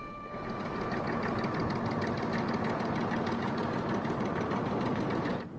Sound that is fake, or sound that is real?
real